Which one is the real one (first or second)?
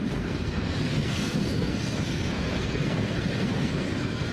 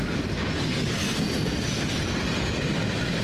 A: second